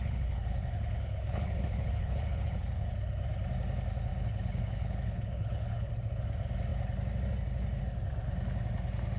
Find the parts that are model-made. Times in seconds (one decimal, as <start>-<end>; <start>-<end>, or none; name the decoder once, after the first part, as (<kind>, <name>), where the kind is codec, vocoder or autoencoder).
0.0-2.9 (codec, HILCodec); 4.1-5.9